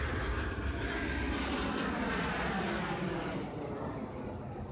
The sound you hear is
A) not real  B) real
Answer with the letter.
B